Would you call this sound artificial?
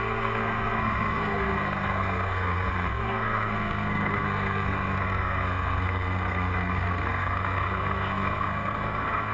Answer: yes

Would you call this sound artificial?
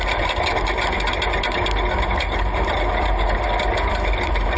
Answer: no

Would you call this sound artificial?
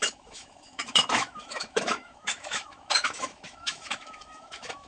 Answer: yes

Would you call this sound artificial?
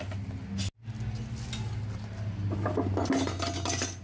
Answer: no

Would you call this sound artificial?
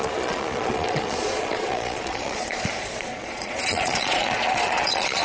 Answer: yes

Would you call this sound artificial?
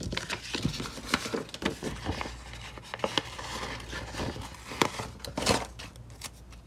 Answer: no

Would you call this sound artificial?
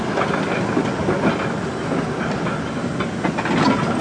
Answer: no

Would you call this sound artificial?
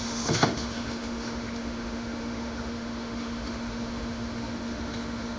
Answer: yes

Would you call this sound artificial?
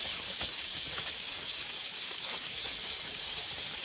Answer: yes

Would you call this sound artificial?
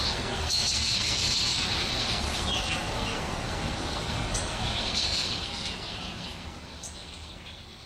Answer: yes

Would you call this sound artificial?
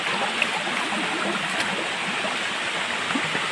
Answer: no